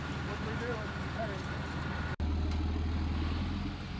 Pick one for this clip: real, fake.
real